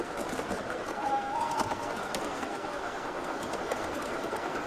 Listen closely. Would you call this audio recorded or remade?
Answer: remade